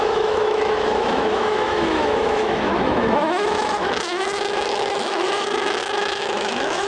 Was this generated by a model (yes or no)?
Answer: yes